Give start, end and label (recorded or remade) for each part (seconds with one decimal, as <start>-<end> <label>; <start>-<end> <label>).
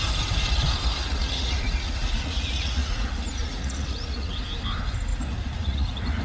0.0-1.0 recorded; 1.0-4.3 remade; 4.3-5.1 recorded; 5.1-6.2 remade